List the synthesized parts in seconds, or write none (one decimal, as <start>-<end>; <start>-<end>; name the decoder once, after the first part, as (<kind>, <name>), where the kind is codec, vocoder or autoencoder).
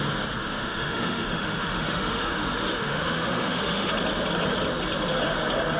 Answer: 0.4-3.9 (autoencoder, DAC-VAE)